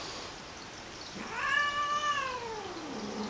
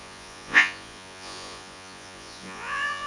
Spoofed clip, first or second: second